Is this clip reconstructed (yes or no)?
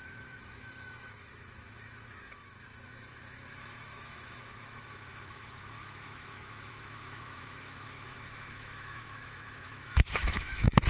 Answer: yes